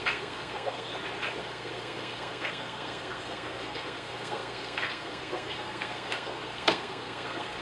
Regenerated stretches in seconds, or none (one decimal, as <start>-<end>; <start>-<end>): 0.0-0.9; 1.4-7.6